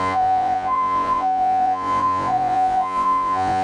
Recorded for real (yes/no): no